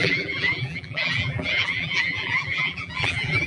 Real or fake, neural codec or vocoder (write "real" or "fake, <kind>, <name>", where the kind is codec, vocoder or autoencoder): fake, vocoder, BigVGAN v2